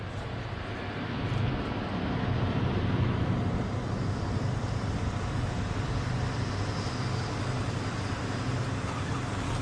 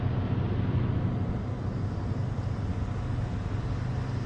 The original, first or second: second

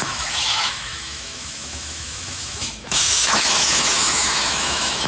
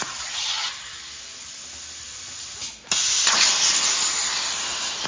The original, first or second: second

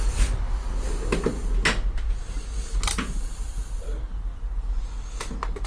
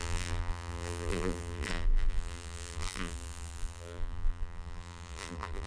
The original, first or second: first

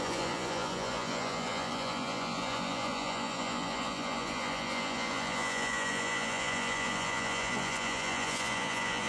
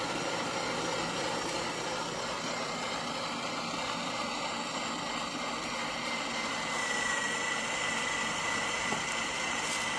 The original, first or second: second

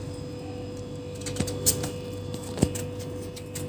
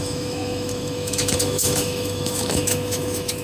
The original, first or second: first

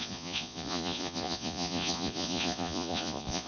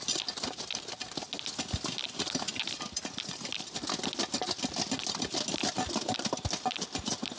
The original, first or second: second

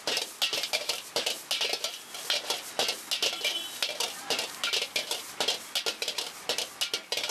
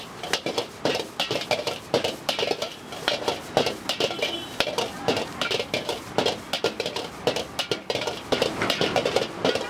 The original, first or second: first